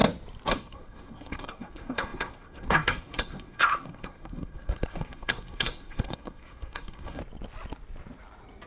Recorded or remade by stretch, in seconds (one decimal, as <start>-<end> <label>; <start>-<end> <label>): 0.0-0.5 recorded; 0.5-7.2 remade; 7.2-8.7 recorded